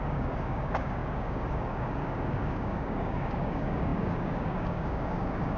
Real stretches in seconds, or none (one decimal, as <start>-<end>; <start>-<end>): none